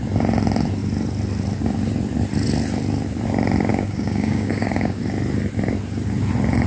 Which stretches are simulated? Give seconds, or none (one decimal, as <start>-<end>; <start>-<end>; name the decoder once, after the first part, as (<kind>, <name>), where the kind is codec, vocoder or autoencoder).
3.7-5.0 (codec, DAC)